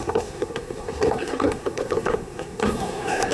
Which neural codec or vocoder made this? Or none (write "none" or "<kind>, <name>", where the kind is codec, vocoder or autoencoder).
codec, SNAC